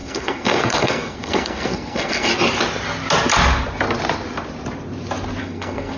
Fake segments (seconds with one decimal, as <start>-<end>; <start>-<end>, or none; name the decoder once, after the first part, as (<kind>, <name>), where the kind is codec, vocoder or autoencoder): 0.0-2.3 (codec, SNAC); 5.4-6.0